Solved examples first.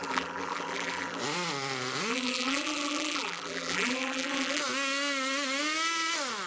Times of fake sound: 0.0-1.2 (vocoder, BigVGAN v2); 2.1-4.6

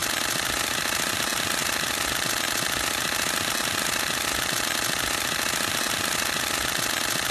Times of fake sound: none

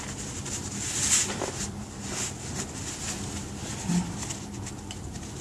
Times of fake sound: none